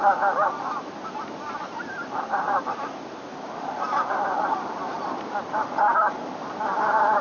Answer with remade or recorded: remade